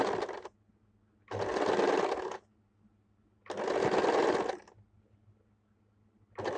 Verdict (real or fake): real